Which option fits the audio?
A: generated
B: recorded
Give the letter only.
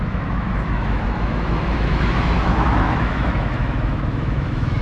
A